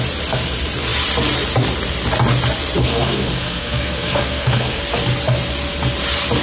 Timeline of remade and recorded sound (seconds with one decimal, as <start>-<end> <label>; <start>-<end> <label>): 0.0-2.8 recorded; 2.8-4.8 remade; 4.8-6.4 recorded